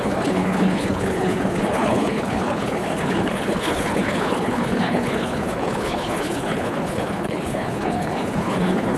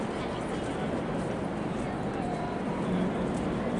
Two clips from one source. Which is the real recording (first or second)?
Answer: second